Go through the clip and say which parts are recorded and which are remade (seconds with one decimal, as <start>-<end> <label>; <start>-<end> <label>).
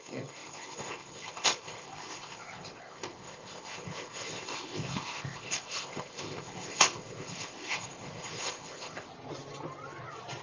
0.0-9.1 remade; 9.1-10.4 recorded